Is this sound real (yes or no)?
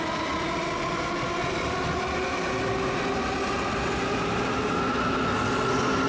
yes